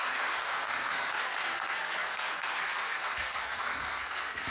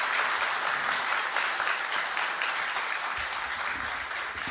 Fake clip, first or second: first